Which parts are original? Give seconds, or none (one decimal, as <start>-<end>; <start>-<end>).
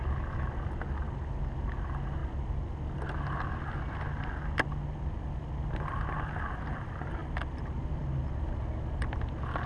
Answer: 0.0-9.7